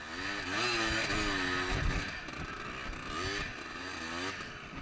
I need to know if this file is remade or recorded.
recorded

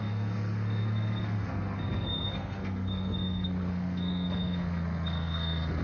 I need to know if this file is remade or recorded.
remade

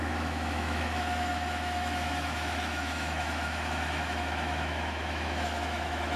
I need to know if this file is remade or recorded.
remade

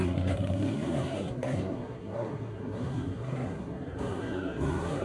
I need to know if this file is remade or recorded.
remade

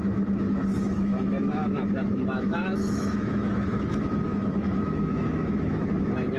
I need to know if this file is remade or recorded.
remade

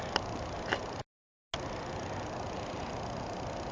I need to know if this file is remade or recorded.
recorded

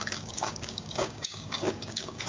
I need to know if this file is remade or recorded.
remade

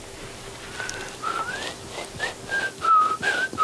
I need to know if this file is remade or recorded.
recorded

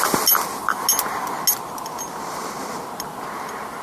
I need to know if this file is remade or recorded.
recorded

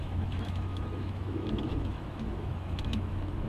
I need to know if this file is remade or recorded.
remade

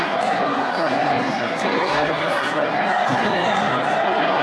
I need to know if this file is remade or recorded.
remade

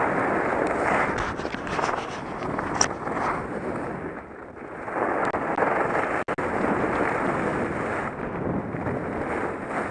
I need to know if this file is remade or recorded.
recorded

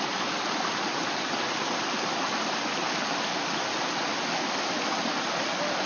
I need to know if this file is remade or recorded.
recorded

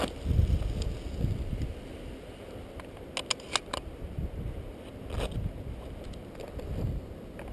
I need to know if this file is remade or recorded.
recorded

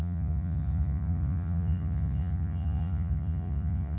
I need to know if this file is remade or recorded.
remade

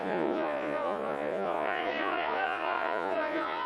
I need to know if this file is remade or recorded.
remade